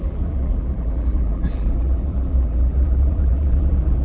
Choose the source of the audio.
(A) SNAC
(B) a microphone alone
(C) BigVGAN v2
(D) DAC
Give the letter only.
C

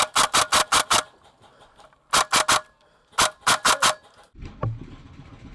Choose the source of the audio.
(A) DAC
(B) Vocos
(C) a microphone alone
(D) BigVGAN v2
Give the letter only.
C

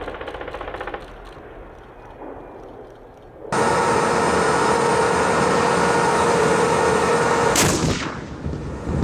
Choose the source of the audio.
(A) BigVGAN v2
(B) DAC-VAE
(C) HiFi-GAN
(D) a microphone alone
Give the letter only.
D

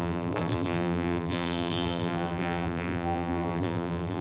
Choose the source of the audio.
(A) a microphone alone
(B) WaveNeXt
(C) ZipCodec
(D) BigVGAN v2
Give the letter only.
D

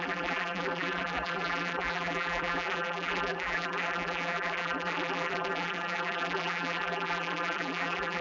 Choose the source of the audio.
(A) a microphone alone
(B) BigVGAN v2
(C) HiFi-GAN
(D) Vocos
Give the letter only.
B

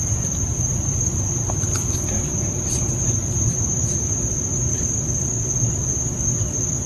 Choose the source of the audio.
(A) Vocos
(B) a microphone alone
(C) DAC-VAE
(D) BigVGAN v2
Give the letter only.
D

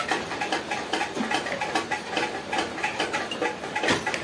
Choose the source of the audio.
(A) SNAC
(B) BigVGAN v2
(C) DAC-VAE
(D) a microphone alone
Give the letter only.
D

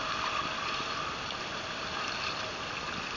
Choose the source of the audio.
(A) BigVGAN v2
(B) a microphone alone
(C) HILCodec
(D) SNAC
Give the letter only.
A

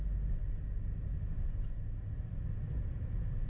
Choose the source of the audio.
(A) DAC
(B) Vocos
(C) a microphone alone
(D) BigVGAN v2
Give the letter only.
C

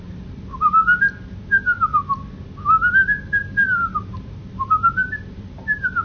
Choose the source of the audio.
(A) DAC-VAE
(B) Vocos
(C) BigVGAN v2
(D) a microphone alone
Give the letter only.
D